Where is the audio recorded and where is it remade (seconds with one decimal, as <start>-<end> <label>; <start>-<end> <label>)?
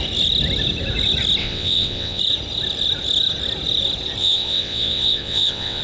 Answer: 0.0-1.4 recorded; 1.4-2.2 remade; 2.2-4.2 recorded; 4.2-5.8 remade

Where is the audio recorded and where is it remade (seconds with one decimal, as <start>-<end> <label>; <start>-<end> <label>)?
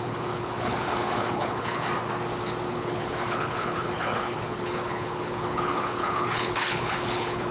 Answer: 0.0-1.9 remade; 1.9-2.7 recorded; 2.7-7.5 remade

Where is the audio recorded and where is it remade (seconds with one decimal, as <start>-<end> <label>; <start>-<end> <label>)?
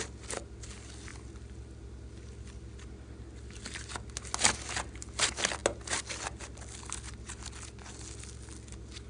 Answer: 0.0-9.1 recorded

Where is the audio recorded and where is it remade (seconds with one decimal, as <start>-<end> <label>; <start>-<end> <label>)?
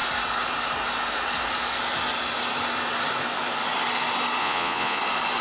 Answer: 0.0-4.4 recorded; 4.4-5.0 remade; 5.0-5.4 recorded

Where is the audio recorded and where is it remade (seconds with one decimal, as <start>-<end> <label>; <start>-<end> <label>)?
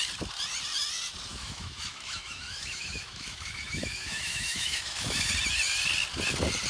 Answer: 0.0-1.3 recorded; 1.3-5.3 remade; 5.3-6.7 recorded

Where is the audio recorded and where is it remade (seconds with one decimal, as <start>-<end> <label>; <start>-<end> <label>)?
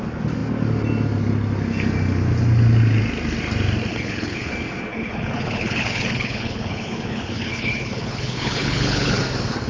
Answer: 0.0-3.9 recorded; 3.9-4.5 remade; 4.5-4.9 recorded; 4.9-9.2 remade; 9.2-9.7 recorded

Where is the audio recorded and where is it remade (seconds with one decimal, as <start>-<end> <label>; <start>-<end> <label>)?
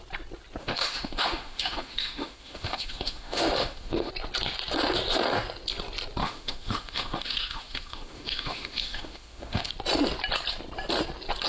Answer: 0.0-0.6 recorded; 0.6-4.1 remade; 4.1-6.2 recorded; 6.2-9.7 remade; 9.7-11.5 recorded